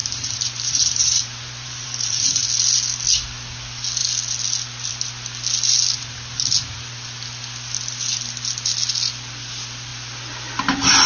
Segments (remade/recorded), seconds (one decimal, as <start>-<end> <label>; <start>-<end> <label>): 0.0-2.4 remade; 2.4-11.1 recorded